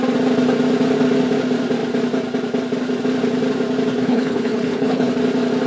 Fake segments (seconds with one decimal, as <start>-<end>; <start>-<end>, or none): 3.9-5.1